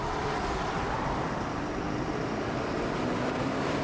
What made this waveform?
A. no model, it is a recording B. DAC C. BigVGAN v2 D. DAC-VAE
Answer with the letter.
C